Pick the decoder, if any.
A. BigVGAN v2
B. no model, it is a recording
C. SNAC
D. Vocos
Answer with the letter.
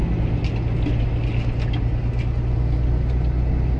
B